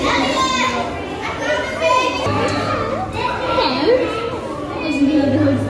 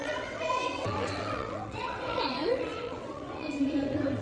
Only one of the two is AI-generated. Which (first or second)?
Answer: second